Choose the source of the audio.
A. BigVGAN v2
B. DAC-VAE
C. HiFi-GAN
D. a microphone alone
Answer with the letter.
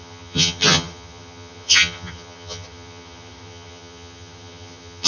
C